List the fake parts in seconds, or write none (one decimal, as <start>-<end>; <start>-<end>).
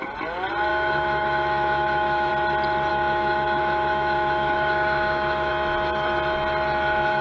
0.7-2.3; 2.9-5.5